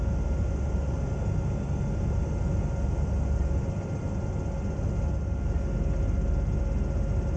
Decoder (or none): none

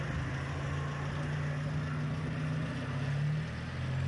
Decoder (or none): none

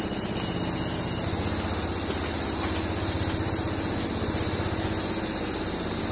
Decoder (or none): none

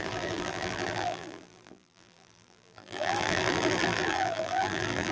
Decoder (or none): vocoder, BigVGAN v2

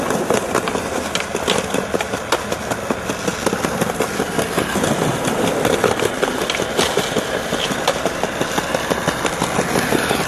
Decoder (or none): none